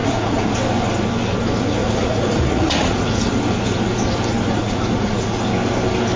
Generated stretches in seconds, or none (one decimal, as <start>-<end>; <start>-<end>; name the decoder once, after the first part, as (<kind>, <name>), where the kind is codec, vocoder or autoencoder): 0.0-0.5 (vocoder, Vocos); 1.8-3.3; 4.5-5.4